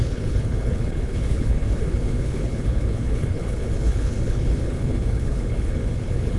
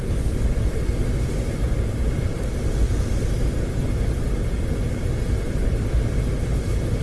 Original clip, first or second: second